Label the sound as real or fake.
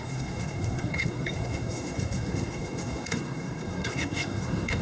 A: fake